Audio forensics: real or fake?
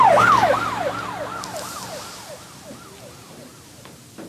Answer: real